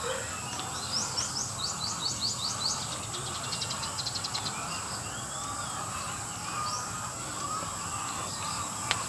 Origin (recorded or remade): recorded